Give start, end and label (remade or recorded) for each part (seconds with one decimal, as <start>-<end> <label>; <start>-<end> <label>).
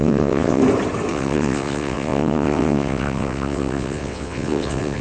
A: 0.0-0.6 remade; 0.6-1.1 recorded; 1.1-5.0 remade